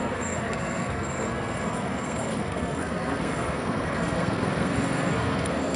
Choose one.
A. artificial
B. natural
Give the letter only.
A